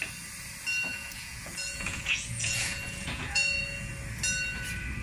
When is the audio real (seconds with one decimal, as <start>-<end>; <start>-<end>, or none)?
0.0-0.9; 3.9-5.0